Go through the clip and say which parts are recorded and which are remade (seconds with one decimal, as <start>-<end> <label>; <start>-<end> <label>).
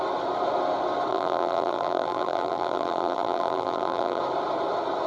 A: 0.0-1.1 recorded; 1.1-4.2 remade; 4.2-5.1 recorded